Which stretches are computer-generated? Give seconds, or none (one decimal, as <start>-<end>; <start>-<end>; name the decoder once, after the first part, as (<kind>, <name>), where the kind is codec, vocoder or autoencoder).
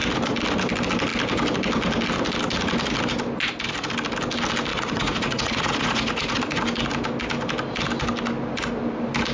4.7-6.4 (vocoder, Vocos)